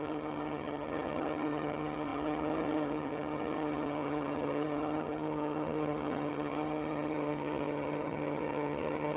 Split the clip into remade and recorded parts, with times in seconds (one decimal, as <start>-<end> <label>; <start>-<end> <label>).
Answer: 0.0-9.2 remade

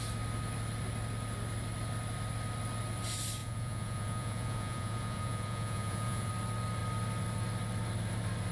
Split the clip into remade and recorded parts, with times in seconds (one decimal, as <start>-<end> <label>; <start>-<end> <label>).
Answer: 0.0-3.4 recorded; 3.4-6.3 remade; 6.3-8.5 recorded